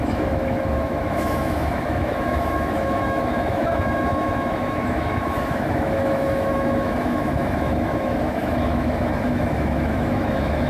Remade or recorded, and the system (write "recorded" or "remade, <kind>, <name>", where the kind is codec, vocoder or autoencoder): remade, autoencoder, DAC-VAE